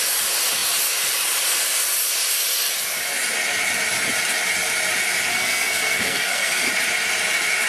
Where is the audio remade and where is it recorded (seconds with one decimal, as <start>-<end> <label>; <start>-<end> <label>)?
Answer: 0.0-5.3 recorded; 5.3-6.7 remade; 6.7-7.7 recorded